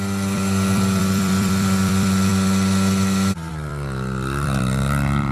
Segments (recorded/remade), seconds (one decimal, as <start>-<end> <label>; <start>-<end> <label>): 0.0-5.3 remade